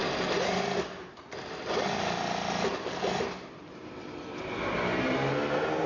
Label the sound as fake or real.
real